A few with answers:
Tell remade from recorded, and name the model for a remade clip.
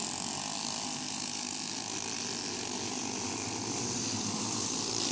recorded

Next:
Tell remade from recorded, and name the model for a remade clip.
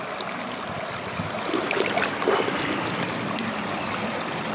recorded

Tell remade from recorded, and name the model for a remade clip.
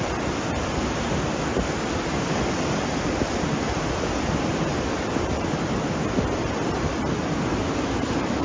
recorded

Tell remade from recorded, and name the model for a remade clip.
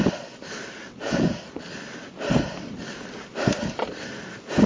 recorded